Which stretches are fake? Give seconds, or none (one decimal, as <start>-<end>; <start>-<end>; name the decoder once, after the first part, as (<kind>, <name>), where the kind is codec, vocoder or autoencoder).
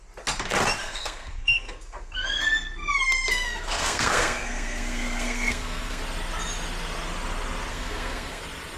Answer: 0.8-6.0 (codec, SNAC); 7.7-8.4